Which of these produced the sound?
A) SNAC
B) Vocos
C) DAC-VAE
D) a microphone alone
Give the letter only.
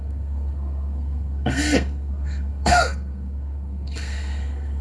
A